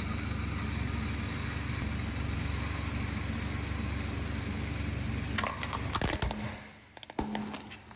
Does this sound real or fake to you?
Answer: real